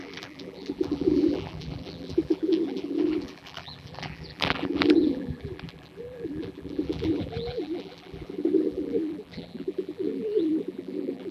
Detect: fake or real fake